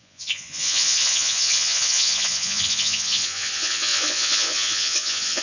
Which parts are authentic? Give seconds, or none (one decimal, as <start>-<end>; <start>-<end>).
none